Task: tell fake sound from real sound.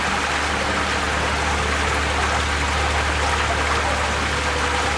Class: real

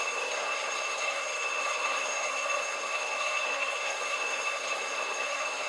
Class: fake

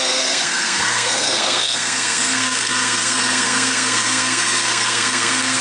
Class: fake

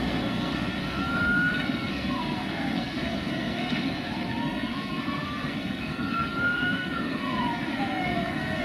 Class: fake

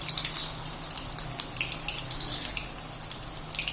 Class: real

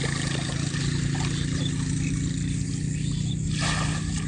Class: real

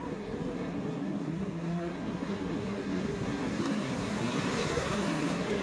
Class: fake